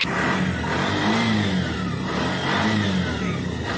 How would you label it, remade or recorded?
recorded